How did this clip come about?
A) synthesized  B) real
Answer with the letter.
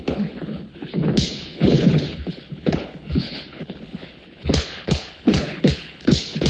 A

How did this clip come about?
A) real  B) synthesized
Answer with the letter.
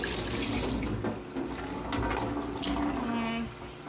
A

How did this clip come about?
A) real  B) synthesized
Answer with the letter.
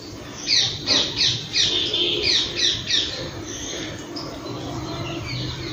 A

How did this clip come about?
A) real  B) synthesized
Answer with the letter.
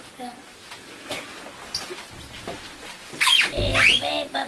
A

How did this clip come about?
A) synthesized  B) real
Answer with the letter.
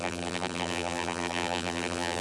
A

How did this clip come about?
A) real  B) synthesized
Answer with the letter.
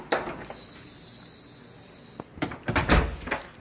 A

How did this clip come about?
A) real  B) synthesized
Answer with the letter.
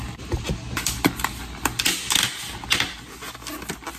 A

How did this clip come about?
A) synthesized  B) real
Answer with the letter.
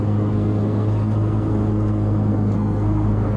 A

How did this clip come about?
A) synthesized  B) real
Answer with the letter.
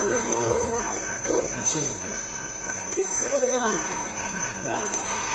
A